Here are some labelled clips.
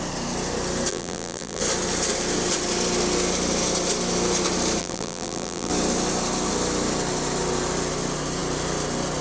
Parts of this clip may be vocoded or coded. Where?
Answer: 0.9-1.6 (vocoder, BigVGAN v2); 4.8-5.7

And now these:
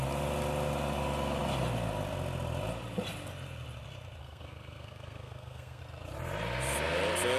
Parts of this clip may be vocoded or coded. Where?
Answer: 4.2-5.8 (codec, SNAC)

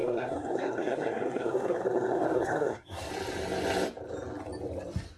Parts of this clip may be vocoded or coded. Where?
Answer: 0.0-3.1 (codec, SNAC)

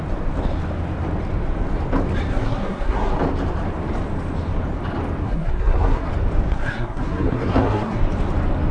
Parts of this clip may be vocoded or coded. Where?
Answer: 2.3-3.1 (codec, SNAC); 5.2-6.1; 6.5-8.0